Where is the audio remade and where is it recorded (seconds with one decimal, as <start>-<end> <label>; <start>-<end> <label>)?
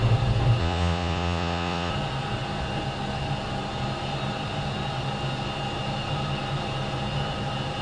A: 0.0-0.6 recorded; 0.6-1.9 remade; 1.9-7.8 recorded